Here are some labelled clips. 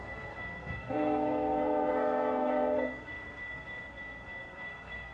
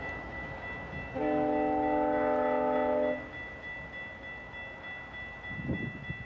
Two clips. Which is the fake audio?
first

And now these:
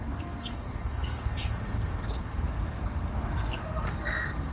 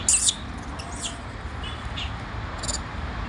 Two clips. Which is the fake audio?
first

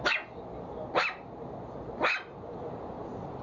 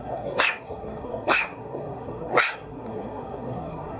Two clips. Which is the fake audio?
second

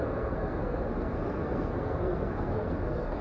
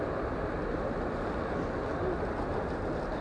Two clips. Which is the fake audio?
first